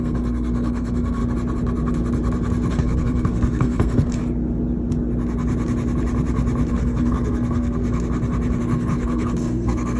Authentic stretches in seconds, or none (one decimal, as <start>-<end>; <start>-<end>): 1.2-2.7; 4.2-6.7; 7.8-8.6